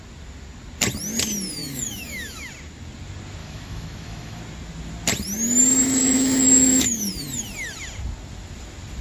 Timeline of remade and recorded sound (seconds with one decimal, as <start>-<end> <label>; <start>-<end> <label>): 0.0-1.6 recorded; 1.6-2.5 remade; 2.5-3.4 recorded; 3.4-4.4 remade; 4.4-6.0 recorded; 6.0-7.1 remade; 7.1-9.0 recorded